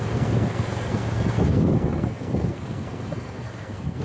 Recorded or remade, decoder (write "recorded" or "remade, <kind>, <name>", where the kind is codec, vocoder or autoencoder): remade, codec, SNAC